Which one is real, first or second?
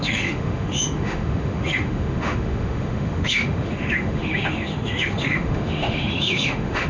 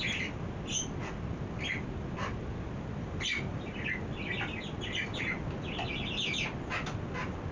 second